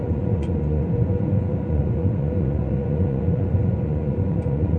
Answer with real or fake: fake